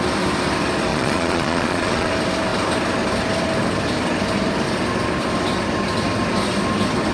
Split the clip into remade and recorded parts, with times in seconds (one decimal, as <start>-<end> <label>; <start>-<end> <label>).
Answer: 0.0-0.9 recorded; 0.9-2.1 remade; 2.1-7.1 recorded